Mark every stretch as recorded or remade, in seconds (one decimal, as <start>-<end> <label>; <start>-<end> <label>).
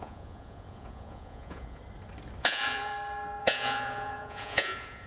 0.0-1.8 remade; 1.8-2.4 recorded; 2.4-2.9 remade; 2.9-3.4 recorded; 3.4-5.1 remade